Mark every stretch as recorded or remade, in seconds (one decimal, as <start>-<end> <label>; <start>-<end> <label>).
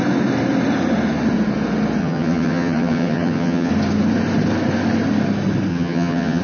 0.0-2.0 recorded; 2.0-3.7 remade; 3.7-5.7 recorded; 5.7-6.4 remade